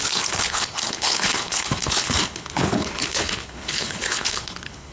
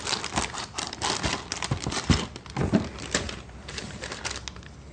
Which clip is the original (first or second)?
second